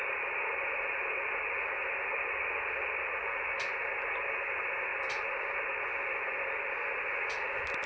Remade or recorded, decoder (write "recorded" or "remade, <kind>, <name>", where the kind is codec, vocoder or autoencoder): recorded